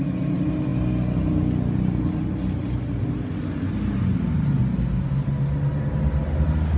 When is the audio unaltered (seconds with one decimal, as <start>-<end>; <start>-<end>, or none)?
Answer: 0.0-6.8